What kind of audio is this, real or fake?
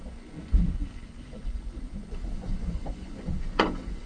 fake